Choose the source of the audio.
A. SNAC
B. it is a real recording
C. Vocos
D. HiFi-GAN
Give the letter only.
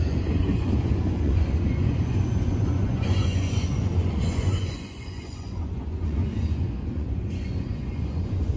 C